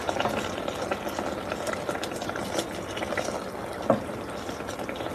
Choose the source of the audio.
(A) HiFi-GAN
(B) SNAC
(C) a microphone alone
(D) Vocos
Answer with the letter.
C